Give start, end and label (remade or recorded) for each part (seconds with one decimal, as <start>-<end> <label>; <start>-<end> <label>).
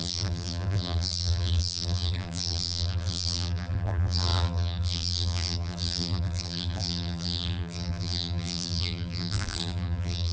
0.0-10.3 remade